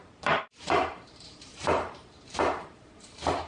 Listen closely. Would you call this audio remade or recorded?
remade